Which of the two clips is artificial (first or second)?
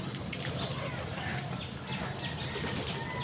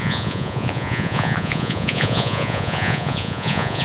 second